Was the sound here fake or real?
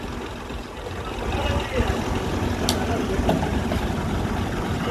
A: real